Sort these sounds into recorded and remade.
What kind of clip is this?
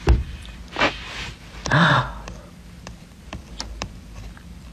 remade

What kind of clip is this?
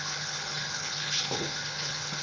remade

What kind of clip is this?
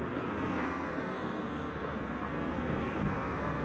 remade